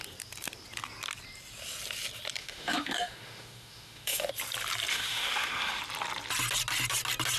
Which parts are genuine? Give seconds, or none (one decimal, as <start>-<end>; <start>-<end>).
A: 0.0-2.4; 4.3-4.9; 5.8-7.4